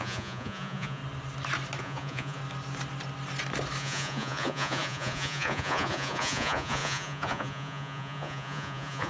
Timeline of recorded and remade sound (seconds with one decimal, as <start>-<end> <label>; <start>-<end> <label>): 0.0-1.0 remade; 1.0-1.8 recorded; 1.8-2.4 remade; 2.4-3.8 recorded; 3.8-9.1 remade